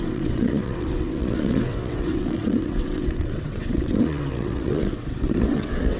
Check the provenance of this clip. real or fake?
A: fake